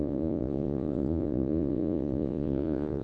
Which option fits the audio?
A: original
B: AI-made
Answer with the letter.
B